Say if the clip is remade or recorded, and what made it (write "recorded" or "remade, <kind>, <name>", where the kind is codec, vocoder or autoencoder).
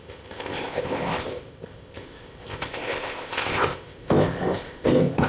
remade, codec, ZipCodec